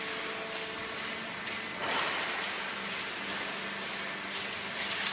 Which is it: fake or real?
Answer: real